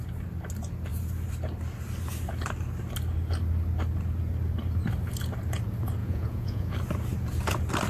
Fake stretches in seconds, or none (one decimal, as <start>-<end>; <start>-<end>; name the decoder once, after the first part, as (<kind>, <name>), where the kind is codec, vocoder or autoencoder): 6.0-6.7 (vocoder, Vocos)